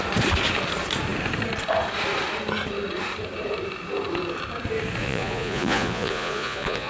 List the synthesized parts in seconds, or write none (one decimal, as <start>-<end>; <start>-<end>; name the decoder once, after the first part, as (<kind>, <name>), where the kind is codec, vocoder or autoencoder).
5.0-6.9 (vocoder, Vocos)